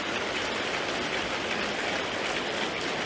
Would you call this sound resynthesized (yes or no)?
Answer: no